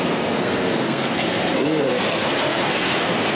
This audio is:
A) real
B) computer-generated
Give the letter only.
B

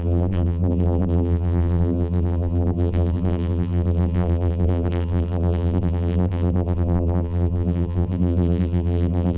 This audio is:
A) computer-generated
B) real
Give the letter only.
A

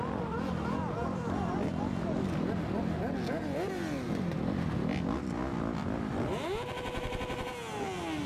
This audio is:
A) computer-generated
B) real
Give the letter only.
B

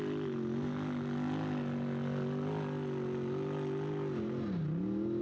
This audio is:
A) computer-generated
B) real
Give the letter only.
B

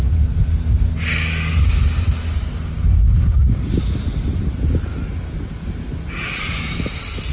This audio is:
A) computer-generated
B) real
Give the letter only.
B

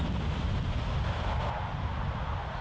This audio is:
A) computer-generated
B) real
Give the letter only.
B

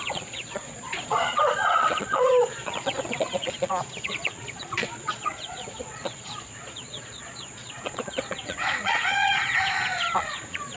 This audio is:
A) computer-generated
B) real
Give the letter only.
A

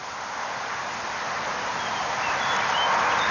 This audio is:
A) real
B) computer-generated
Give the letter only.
A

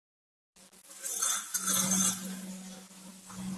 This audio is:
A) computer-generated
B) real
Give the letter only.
B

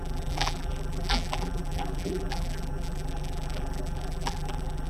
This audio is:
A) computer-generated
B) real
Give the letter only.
A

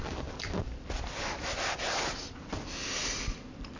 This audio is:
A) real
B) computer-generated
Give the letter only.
A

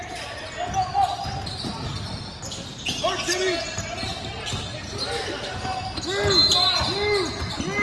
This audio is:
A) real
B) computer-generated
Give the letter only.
A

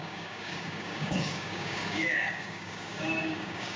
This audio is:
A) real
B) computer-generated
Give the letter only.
B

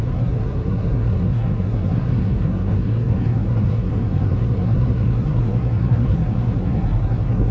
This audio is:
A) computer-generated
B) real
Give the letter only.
A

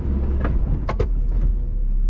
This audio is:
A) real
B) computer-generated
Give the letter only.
A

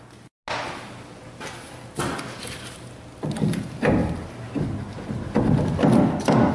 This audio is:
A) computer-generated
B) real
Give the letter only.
B